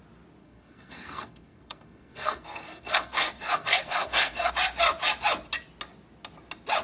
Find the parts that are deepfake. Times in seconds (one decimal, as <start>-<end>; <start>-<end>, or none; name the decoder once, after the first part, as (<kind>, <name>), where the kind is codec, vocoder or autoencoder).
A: 0.4-4.5 (codec, SNAC)